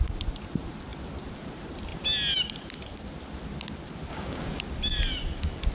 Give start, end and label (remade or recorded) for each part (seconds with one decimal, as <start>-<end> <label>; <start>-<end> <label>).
0.0-4.1 recorded; 4.1-4.6 remade; 4.6-5.7 recorded